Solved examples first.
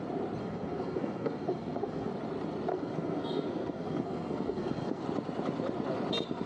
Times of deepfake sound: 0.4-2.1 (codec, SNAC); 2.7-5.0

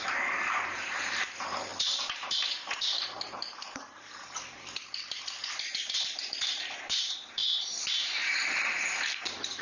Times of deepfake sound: 0.0-1.7 (vocoder, BigVGAN v2); 2.2-9.6

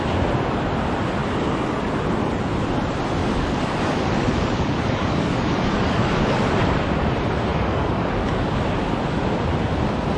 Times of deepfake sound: 3.2-6.4 (codec, DAC); 7.5-8.6

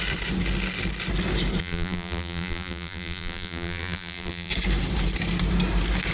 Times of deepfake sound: 1.6-4.5 (vocoder, BigVGAN v2)

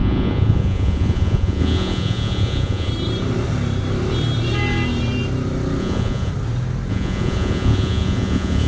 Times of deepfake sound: 0.0-2.9 (vocoder, Vocos); 5.8-6.3; 6.9-8.7